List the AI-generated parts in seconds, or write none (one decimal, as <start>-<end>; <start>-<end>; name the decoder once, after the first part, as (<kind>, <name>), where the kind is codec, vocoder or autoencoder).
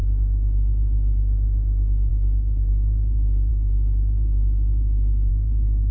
3.5-5.3 (autoencoder, DAC-VAE)